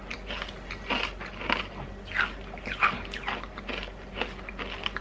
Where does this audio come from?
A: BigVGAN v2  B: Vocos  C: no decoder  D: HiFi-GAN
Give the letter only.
C